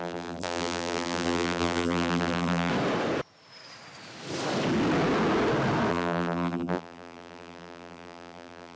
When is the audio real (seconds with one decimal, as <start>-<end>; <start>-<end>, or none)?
2.7-5.9